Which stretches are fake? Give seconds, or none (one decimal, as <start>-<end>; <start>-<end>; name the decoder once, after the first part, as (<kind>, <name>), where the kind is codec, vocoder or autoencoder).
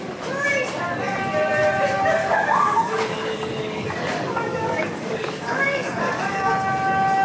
2.2-6.5 (codec, DAC)